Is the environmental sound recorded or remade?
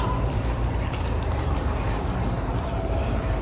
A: remade